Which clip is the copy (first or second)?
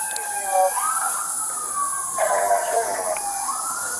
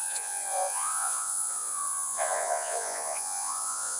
second